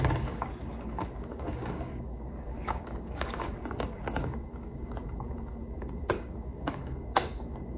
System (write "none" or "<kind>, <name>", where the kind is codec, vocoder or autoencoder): codec, DAC